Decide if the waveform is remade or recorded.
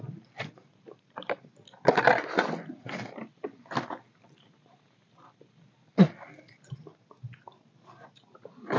recorded